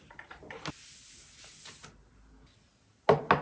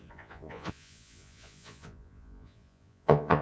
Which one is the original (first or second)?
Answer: first